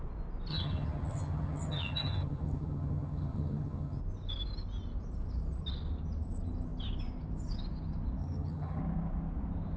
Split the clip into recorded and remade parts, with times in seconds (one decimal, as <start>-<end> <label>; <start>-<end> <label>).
0.0-0.5 recorded; 0.5-4.0 remade; 4.0-8.2 recorded; 8.2-8.8 remade; 8.8-9.8 recorded